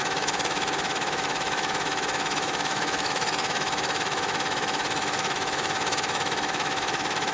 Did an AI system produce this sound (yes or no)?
yes